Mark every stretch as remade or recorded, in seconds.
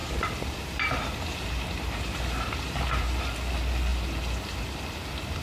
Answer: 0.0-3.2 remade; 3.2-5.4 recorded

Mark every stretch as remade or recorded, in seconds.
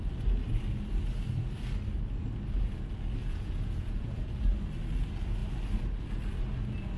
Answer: 0.0-3.2 recorded; 3.2-4.3 remade; 4.3-7.0 recorded